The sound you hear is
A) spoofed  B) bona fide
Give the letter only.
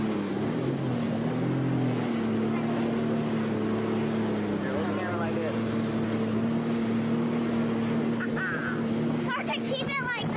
B